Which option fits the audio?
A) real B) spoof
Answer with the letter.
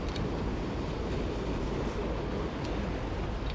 A